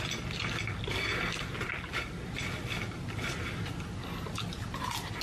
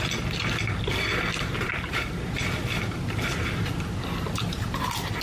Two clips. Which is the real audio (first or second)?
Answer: first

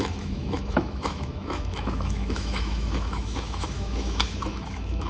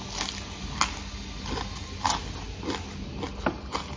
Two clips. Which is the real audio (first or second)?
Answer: second